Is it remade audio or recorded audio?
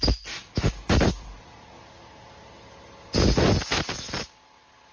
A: recorded